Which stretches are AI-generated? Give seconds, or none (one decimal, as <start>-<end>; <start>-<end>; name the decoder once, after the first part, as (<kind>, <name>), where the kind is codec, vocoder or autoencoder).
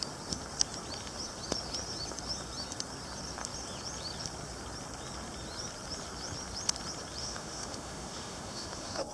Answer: 7.2-9.1 (autoencoder, DAC-VAE)